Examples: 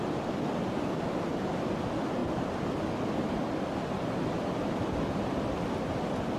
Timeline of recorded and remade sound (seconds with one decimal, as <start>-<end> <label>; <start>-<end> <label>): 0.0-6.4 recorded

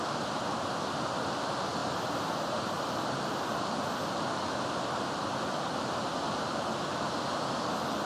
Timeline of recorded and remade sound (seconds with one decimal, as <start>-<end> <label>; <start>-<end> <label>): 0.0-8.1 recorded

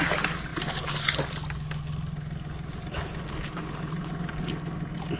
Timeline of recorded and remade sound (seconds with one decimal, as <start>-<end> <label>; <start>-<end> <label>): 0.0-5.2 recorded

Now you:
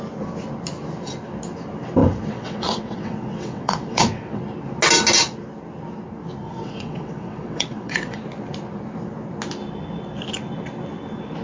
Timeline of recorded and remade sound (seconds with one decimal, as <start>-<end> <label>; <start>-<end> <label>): 0.0-2.0 recorded; 2.0-4.4 remade; 4.4-6.4 recorded; 6.4-8.2 remade; 8.2-11.4 recorded